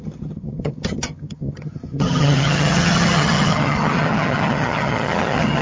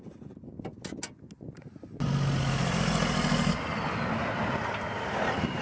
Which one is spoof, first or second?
first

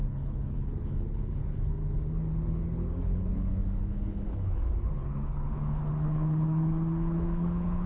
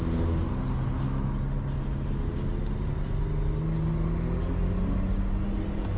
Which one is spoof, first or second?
first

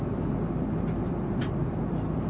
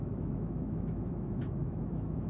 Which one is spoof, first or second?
second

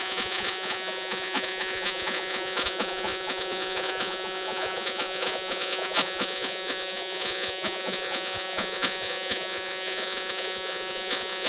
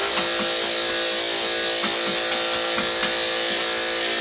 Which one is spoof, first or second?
first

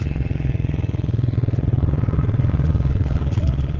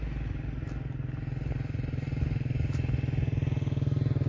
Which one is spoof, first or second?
first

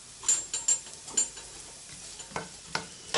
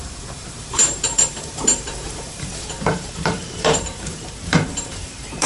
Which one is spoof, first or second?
second